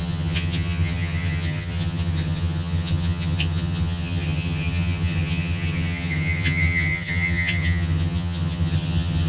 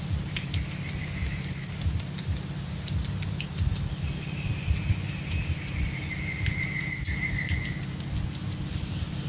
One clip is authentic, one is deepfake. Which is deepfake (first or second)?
first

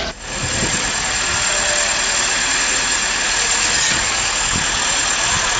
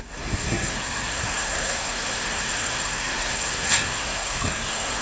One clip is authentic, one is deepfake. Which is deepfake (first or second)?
second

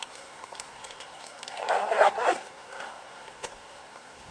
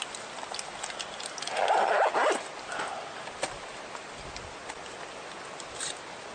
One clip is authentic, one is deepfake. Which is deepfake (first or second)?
first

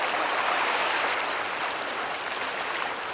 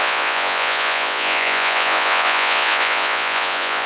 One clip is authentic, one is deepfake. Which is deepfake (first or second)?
second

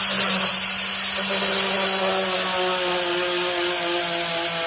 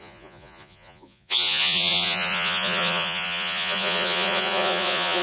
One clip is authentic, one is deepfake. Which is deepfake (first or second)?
second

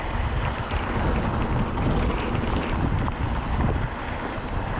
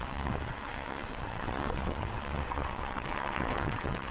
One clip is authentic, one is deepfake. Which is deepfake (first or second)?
second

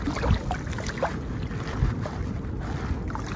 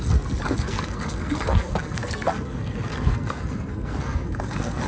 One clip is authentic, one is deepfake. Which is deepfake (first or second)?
second